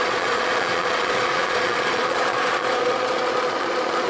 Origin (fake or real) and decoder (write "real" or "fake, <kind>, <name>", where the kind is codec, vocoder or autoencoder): fake, vocoder, Vocos